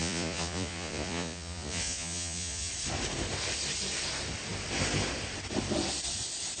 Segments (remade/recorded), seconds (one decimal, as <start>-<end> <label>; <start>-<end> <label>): 0.0-2.7 remade; 2.7-6.6 recorded